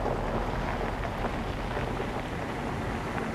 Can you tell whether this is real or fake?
real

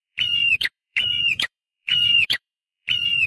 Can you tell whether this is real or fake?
fake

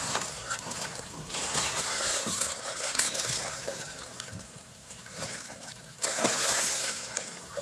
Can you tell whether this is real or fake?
fake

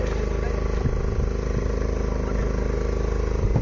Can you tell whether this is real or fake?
real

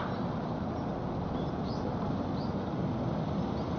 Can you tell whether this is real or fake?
real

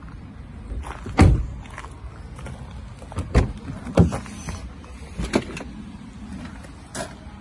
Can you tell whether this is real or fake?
real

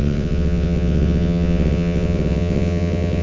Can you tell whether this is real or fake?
fake